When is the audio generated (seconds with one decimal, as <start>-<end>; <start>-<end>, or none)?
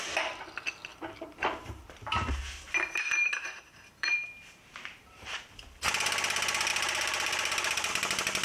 0.9-5.5; 6.7-7.9